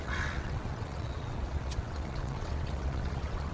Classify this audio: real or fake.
fake